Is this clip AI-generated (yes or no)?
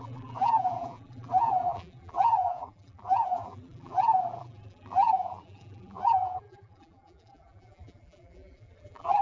yes